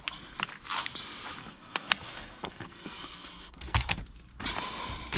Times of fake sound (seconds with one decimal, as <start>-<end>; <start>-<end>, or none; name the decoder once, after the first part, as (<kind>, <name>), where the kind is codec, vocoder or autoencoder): 1.4-4.0 (codec, SNAC)

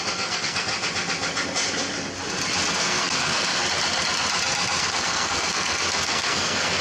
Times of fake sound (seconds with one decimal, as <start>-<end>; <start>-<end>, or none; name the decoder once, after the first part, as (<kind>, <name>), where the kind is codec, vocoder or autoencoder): 0.0-0.7 (codec, SNAC); 2.7-3.6; 4.8-6.8

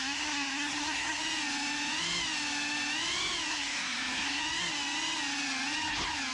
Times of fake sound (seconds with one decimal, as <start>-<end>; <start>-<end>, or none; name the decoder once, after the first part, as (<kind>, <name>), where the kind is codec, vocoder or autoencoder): 0.0-1.2 (codec, SNAC); 3.5-4.4